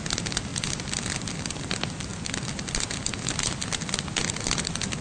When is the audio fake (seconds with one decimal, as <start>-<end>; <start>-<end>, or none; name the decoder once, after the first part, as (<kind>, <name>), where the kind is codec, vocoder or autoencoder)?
none